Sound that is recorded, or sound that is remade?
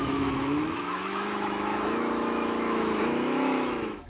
remade